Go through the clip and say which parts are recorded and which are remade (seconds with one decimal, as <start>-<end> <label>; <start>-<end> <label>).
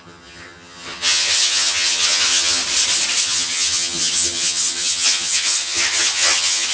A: 0.0-2.6 remade; 2.6-3.2 recorded; 3.2-6.7 remade